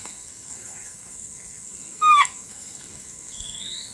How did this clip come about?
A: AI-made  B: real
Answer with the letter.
A